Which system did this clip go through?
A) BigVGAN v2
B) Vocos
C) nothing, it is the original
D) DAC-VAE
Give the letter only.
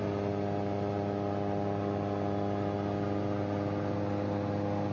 C